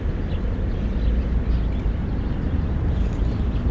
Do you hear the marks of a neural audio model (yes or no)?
no